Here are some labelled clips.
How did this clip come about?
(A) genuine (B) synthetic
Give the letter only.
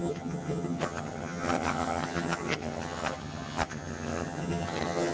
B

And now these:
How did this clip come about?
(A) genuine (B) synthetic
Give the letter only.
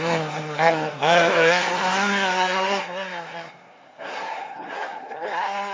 B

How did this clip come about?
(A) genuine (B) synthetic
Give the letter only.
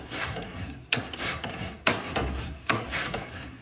B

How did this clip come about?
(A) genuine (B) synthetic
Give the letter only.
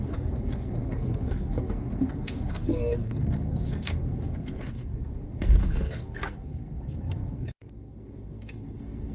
B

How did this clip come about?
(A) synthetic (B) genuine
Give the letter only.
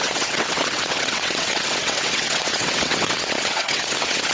A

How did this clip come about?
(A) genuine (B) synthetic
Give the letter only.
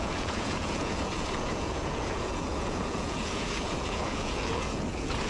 B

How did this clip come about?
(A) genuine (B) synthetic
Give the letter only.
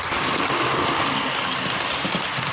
A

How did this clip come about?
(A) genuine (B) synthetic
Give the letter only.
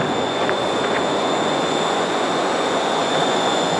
B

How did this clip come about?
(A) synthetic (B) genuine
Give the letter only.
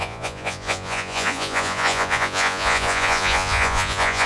A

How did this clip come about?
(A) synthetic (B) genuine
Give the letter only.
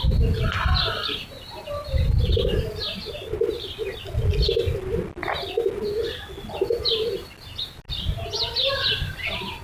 B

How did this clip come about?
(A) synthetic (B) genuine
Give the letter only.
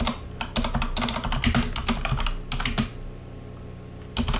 B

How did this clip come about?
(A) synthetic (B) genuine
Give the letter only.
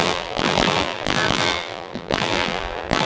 A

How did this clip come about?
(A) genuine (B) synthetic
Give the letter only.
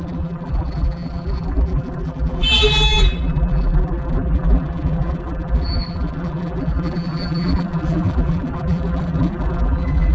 B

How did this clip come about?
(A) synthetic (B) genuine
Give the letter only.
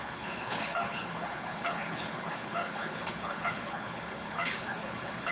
A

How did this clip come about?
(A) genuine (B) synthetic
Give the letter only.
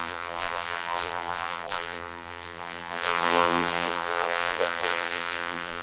B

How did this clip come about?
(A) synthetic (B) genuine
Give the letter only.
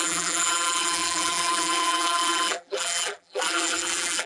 A